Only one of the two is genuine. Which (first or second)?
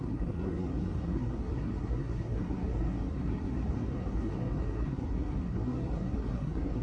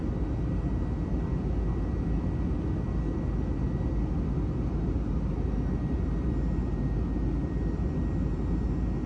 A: second